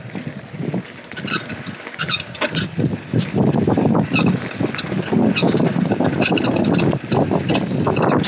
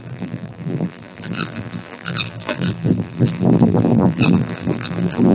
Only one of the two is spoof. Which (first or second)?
second